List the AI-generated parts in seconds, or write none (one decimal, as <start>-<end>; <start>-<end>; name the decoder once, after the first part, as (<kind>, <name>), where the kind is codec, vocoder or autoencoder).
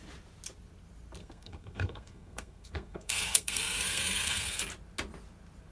1.2-4.6 (codec, SNAC)